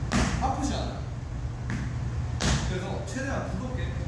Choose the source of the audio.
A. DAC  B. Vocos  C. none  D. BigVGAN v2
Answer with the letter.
C